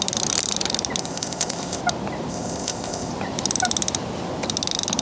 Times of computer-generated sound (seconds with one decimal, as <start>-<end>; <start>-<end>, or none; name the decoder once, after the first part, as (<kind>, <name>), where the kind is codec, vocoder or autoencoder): 1.0-1.8 (codec, ZipCodec); 2.3-3.1